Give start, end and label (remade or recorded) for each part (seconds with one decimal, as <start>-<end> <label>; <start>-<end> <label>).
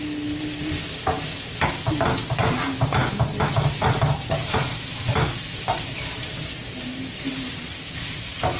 0.0-8.6 recorded